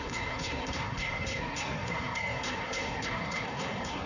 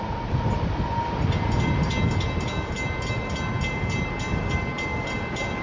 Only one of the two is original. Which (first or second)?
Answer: second